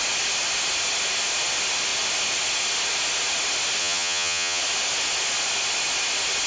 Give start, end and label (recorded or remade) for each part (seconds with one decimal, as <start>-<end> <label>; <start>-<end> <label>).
0.0-3.8 recorded; 3.8-4.6 remade; 4.6-6.5 recorded